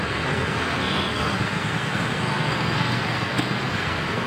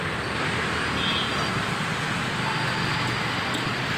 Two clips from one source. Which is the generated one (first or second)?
first